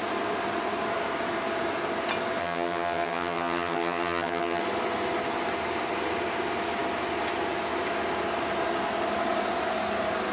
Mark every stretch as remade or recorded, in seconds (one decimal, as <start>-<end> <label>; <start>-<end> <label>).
0.0-2.4 recorded; 2.4-4.6 remade; 4.6-10.3 recorded